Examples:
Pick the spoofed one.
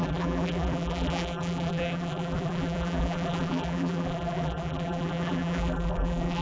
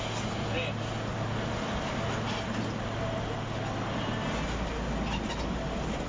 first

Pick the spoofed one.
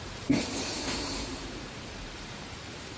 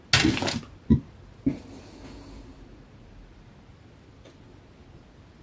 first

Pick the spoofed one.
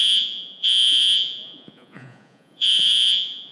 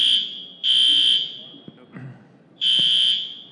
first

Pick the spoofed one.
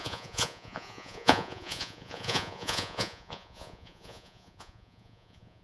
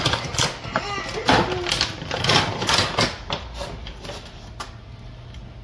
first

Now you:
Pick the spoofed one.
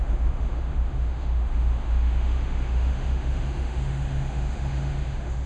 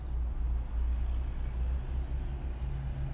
first